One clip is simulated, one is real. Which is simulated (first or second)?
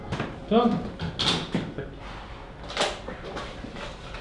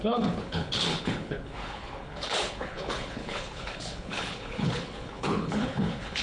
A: second